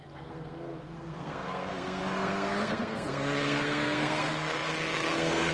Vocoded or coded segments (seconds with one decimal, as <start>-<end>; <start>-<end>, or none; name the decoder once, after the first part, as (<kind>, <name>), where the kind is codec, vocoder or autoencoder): 0.0-5.5 (codec, SNAC)